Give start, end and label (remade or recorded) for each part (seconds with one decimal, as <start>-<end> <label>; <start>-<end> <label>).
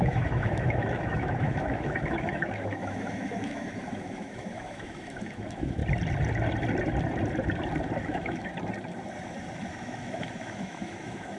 0.0-5.8 remade; 5.8-8.0 recorded; 8.0-8.5 remade; 8.5-9.7 recorded; 9.7-11.4 remade